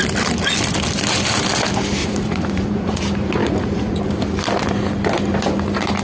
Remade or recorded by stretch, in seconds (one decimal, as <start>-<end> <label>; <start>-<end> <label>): 0.0-2.0 recorded; 2.0-3.0 remade; 3.0-3.4 recorded; 3.4-4.0 remade; 4.0-6.0 recorded